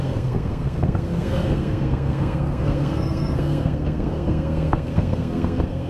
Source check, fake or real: fake